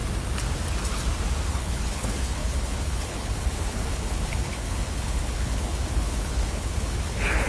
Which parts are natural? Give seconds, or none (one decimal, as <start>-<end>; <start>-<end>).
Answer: 0.0-1.5